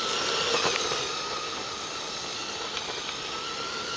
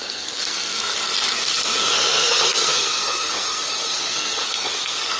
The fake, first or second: second